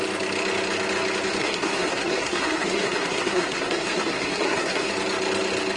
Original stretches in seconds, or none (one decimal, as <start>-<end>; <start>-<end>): 0.0-1.4; 4.9-5.8